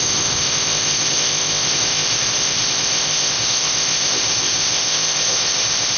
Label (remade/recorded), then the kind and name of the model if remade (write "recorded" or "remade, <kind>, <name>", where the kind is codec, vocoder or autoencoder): remade, codec, ZipCodec